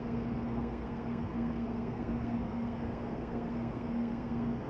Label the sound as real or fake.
fake